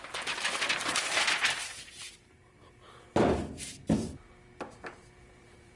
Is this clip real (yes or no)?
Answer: no